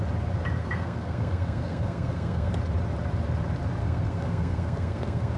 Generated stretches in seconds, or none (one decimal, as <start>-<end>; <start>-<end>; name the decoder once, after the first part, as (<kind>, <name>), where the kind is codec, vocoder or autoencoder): 0.6-2.5 (codec, SNAC); 3.8-5.4